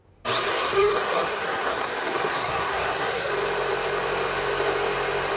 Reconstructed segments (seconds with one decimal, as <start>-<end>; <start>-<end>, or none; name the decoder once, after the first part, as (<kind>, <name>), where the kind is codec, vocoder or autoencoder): 0.5-3.3 (codec, SNAC)

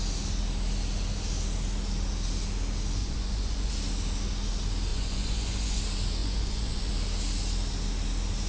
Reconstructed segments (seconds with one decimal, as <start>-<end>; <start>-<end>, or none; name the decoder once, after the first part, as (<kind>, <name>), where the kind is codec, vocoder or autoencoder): 3.0-3.7 (vocoder, Vocos); 4.9-5.8; 6.2-6.9

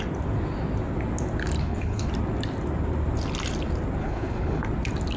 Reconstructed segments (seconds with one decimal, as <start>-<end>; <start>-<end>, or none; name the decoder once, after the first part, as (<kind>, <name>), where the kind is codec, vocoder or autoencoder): 1.6-2.1 (codec, HILCodec); 4.0-4.6

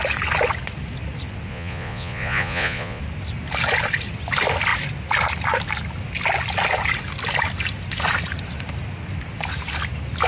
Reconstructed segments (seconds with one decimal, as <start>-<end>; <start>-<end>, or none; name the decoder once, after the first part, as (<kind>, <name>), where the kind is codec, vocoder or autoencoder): 1.5-3.0 (vocoder, Vocos)

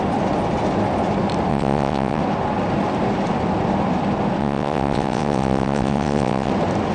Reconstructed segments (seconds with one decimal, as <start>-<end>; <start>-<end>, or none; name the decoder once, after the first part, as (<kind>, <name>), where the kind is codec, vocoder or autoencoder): 1.5-2.2 (vocoder, WaveNeXt); 4.4-6.5